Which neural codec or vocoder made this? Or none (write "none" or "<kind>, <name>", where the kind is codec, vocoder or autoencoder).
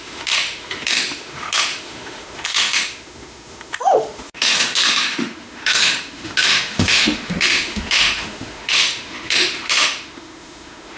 autoencoder, DAC-VAE